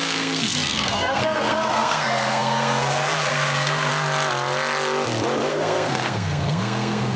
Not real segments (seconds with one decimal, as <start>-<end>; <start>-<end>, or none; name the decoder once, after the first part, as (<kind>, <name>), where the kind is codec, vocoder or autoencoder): 0.0-3.9 (codec, SNAC); 5.5-7.2